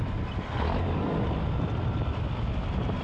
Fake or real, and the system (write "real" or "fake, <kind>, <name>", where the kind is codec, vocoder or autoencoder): real